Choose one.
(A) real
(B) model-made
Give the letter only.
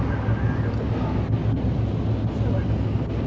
A